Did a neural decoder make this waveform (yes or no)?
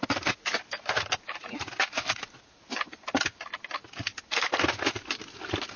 no